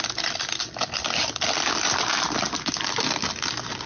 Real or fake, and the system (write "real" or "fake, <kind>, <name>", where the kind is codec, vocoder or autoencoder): real